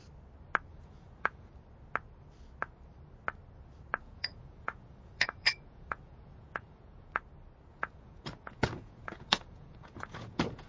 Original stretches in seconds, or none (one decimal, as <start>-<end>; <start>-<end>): 0.0-0.7; 1.5-4.0; 7.2-7.7